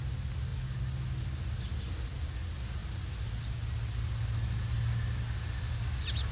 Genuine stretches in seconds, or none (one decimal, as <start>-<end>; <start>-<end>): 0.0-6.3